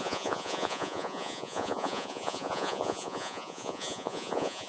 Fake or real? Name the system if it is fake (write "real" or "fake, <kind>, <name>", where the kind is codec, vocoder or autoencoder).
fake, vocoder, Vocos